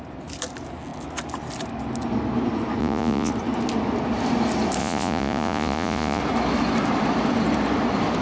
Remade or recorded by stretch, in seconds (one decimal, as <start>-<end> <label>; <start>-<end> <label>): 0.0-2.8 recorded; 2.8-3.3 remade; 3.3-4.8 recorded; 4.8-6.2 remade; 6.2-8.2 recorded